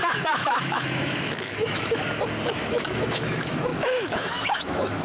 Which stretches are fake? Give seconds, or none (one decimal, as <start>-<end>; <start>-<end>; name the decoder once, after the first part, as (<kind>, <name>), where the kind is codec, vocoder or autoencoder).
0.0-2.0 (autoencoder, DAC-VAE); 2.6-5.0